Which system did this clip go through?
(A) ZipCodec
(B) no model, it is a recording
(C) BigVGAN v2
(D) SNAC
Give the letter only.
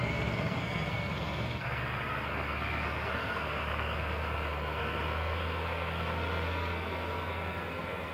D